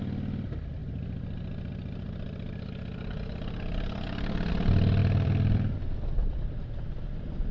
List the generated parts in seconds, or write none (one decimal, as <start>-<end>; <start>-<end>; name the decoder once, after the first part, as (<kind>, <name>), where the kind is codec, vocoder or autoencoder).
5.0-6.6 (vocoder, BigVGAN v2)